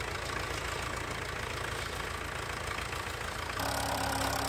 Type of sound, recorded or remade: recorded